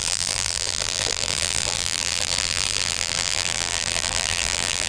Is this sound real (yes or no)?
no